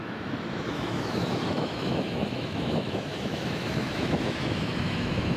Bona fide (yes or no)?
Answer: no